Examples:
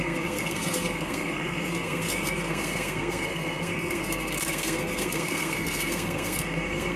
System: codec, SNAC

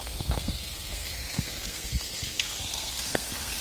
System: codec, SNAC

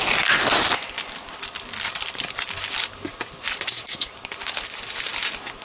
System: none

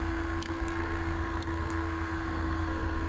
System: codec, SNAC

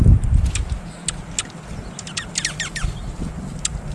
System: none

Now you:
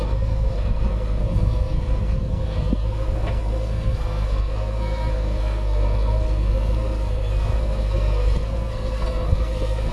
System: codec, SNAC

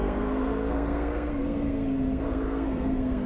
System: codec, SNAC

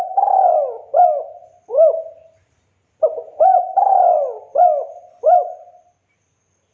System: none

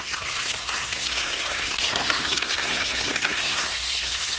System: codec, SNAC